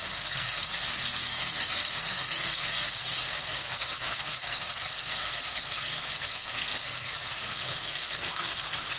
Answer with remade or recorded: remade